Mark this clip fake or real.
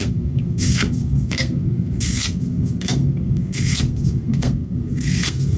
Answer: fake